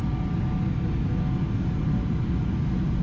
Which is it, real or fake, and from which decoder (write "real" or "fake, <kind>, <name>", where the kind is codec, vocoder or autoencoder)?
real